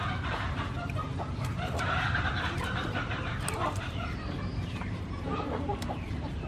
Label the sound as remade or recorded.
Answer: remade